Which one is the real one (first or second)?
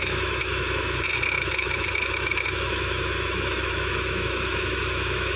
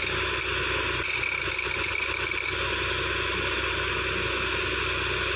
second